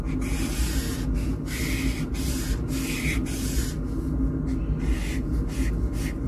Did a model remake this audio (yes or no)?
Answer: no